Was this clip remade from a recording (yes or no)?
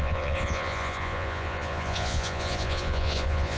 yes